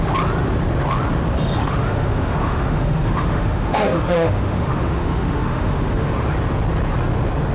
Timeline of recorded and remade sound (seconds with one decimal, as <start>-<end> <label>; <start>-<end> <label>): 0.0-1.6 recorded; 1.6-6.1 remade; 6.1-7.5 recorded